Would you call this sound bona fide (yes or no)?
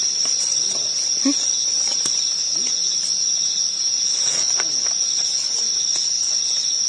yes